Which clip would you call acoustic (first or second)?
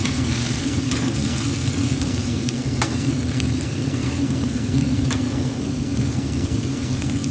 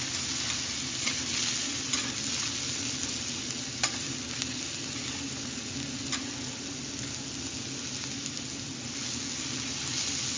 second